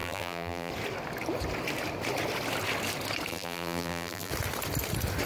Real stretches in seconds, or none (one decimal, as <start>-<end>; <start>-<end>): 0.7-3.3; 4.3-5.3

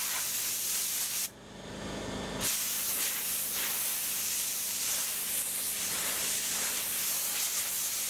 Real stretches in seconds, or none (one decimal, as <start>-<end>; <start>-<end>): 0.0-8.1

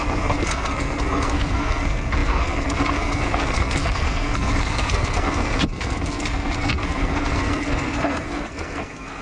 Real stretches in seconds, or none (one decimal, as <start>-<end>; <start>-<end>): none

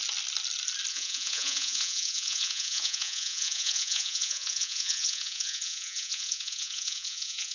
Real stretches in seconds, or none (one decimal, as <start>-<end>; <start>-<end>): 0.0-0.9

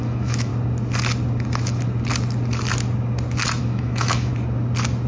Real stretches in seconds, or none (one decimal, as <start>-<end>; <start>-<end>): 0.5-3.6; 4.3-5.1

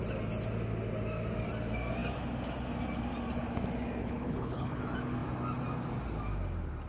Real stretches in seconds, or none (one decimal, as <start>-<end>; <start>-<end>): 0.0-4.0; 4.8-6.9

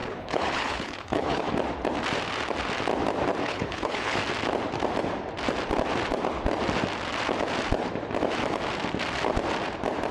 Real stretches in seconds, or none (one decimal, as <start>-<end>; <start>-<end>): 1.5-3.4; 4.2-10.1